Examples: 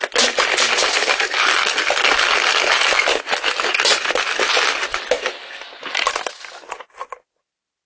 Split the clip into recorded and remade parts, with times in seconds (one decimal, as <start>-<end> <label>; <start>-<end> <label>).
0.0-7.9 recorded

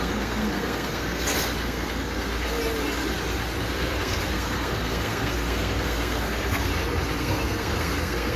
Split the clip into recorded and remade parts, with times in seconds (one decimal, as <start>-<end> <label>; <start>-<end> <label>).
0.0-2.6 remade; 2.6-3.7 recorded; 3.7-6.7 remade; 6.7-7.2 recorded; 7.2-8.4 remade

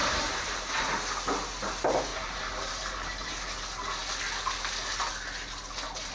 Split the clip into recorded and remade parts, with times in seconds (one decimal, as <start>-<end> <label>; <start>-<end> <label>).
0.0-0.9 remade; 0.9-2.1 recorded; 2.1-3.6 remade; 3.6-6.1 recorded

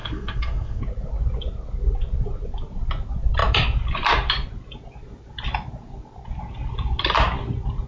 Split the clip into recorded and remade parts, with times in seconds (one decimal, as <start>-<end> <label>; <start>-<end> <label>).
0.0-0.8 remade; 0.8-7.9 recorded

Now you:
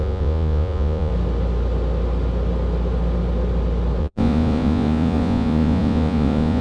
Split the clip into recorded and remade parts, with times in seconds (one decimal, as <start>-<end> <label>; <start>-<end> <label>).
0.0-1.1 remade; 1.1-4.0 recorded; 4.0-6.6 remade

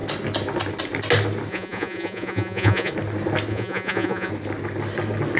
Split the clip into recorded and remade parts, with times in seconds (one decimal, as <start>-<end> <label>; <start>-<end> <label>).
0.0-1.5 recorded; 1.5-2.9 remade; 2.9-3.5 recorded; 3.5-4.3 remade; 4.3-5.4 recorded

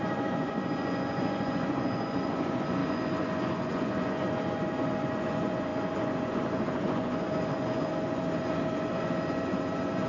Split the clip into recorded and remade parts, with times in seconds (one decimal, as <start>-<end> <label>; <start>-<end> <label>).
0.0-10.1 remade